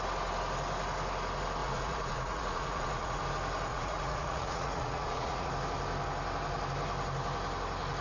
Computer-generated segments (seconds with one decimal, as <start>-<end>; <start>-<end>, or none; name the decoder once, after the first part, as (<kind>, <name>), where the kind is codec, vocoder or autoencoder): 1.6-3.2 (vocoder, Vocos); 3.7-5.5